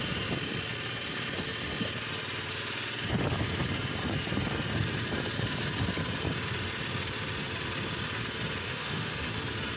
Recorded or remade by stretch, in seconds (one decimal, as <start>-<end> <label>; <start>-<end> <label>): 0.0-8.6 recorded; 8.6-9.4 remade; 9.4-9.8 recorded